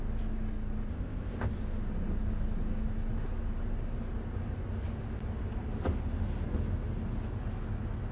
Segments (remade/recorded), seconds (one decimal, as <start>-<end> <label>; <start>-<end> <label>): 0.0-0.9 recorded; 0.9-1.5 remade; 1.5-8.1 recorded